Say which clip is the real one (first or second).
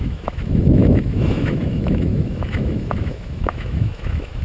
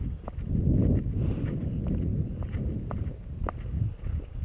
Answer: second